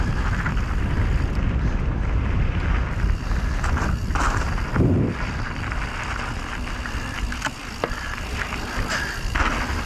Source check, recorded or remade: recorded